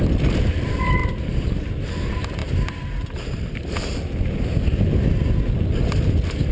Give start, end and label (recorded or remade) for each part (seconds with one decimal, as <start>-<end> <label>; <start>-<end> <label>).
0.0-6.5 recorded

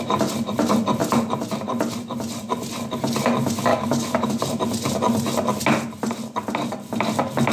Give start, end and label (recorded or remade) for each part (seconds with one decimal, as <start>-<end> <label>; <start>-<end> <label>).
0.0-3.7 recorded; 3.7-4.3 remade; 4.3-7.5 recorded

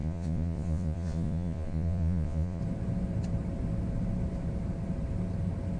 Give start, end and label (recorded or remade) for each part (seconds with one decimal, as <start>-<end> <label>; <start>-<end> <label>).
0.0-2.6 remade; 2.6-5.8 recorded

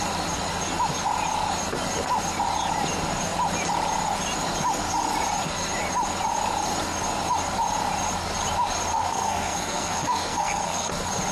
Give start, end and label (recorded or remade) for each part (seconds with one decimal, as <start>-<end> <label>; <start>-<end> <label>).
0.0-8.9 recorded; 8.9-10.9 remade; 10.9-11.3 recorded

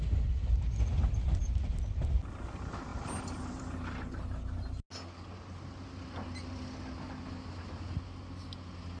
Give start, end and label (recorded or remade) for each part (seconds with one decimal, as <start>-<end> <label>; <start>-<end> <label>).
0.0-9.0 recorded

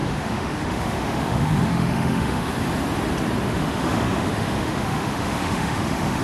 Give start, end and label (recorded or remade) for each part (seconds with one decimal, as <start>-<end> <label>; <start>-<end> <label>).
0.0-2.5 remade; 2.5-3.5 recorded; 3.5-6.2 remade

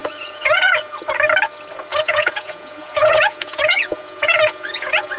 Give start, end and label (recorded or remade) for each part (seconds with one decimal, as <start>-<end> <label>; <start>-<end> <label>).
0.0-0.9 remade; 0.9-1.9 recorded; 1.9-5.2 remade